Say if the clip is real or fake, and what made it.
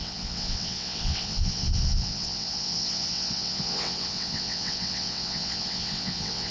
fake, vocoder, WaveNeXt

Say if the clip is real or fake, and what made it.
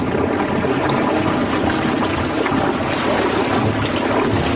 real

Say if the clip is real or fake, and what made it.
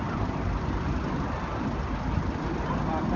real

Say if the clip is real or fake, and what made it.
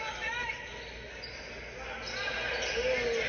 real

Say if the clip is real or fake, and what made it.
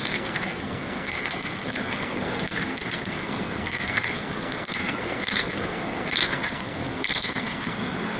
fake, codec, SNAC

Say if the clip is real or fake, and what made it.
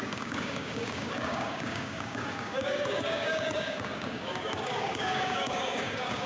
fake, codec, DAC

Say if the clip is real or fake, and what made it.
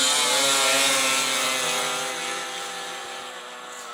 real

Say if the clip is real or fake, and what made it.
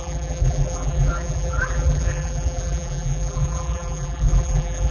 fake, vocoder, BigVGAN v2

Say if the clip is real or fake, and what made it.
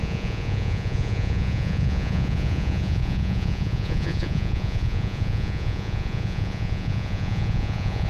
fake, vocoder, Vocos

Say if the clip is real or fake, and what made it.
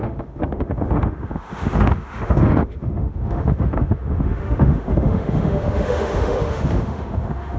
fake, autoencoder, DAC-VAE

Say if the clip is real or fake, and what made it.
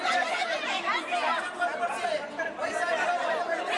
real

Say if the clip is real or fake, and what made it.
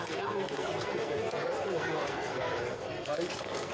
fake, codec, SNAC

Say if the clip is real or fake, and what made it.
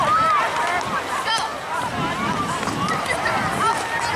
real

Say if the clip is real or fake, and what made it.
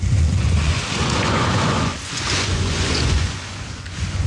fake, vocoder, Vocos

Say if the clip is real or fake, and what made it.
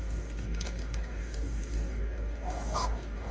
fake, codec, DAC